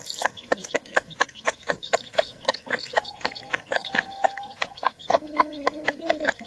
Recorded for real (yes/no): no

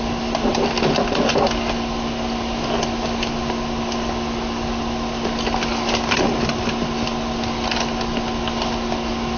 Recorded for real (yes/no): yes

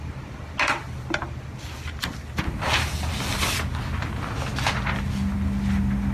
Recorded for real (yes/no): yes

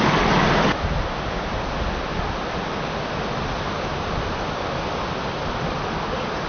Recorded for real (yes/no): yes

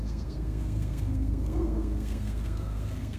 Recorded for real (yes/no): no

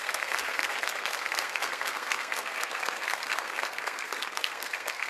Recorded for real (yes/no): no